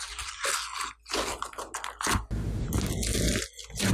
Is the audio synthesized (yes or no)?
no